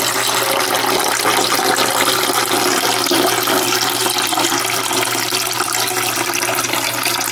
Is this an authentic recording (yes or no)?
yes